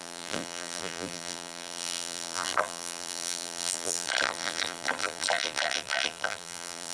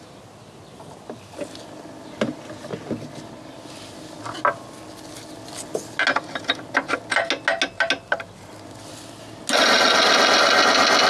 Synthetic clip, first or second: first